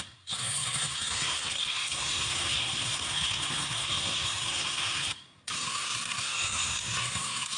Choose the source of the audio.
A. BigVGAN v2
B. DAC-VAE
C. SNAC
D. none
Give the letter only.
C